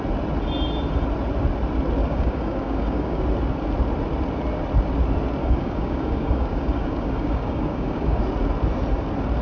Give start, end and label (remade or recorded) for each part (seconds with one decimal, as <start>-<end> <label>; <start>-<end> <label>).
0.0-2.0 recorded; 2.0-3.2 remade; 3.2-5.4 recorded; 5.4-8.2 remade; 8.2-9.4 recorded